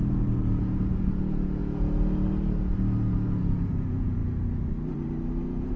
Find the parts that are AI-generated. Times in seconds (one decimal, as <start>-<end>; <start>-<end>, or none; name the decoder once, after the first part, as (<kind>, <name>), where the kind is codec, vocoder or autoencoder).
0.0-1.6 (vocoder, Vocos); 3.4-4.2; 5.3-5.8